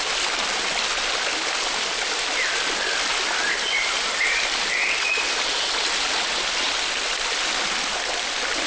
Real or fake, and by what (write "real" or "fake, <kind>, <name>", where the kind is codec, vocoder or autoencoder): real